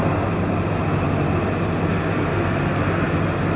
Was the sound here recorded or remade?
recorded